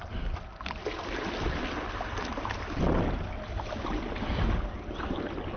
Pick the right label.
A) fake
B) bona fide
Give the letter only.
B